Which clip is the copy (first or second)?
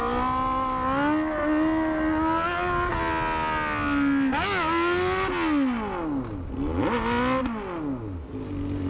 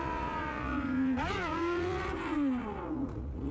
second